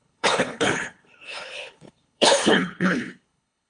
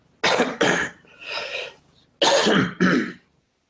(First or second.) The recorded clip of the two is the second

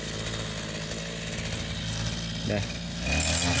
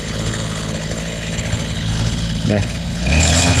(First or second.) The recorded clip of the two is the first